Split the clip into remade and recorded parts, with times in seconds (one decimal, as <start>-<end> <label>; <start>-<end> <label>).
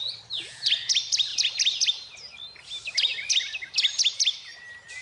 0.0-5.0 recorded